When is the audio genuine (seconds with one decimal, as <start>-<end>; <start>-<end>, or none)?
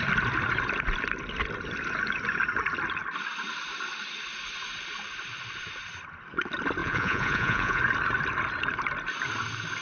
0.0-6.8; 7.8-9.8